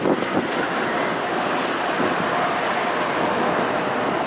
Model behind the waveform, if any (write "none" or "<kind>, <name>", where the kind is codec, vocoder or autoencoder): none